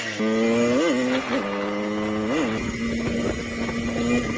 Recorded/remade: recorded